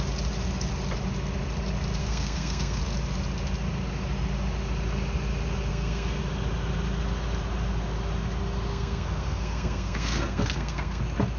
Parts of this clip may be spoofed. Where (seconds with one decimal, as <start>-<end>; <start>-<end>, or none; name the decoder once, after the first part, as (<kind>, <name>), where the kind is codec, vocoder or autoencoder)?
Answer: 2.0-2.8 (codec, SNAC); 5.7-6.2; 8.7-11.0